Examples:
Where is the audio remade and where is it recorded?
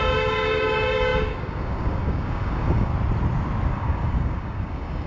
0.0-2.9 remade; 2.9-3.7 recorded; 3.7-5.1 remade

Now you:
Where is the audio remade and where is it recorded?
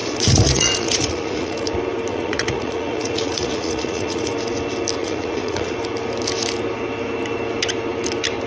0.0-1.7 remade; 1.7-2.1 recorded; 2.1-4.3 remade; 4.3-5.0 recorded; 5.0-5.8 remade; 5.8-8.5 recorded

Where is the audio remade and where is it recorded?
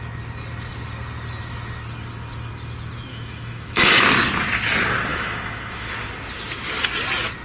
0.0-3.1 recorded; 3.1-4.0 remade; 4.0-5.1 recorded; 5.1-5.9 remade; 5.9-7.4 recorded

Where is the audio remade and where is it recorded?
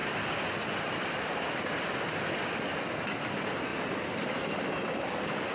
0.0-5.5 recorded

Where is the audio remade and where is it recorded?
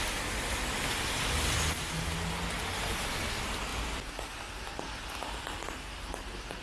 0.0-6.6 recorded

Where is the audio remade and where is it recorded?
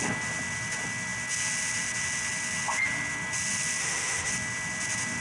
0.0-3.8 recorded; 3.8-4.3 remade; 4.3-5.2 recorded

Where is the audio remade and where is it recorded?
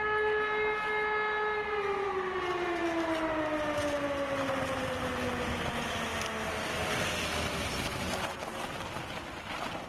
0.0-9.9 recorded